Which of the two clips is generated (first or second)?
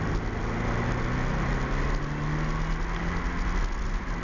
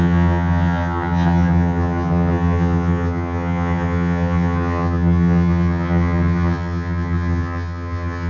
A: second